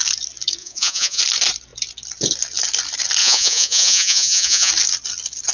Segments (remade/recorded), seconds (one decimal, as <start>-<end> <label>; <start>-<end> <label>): 0.0-0.6 recorded; 0.6-1.2 remade; 1.2-3.2 recorded; 3.2-4.7 remade; 4.7-5.5 recorded